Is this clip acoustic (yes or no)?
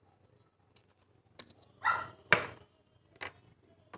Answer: yes